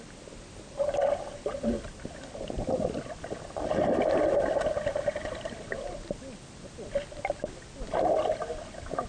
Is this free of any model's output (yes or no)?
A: yes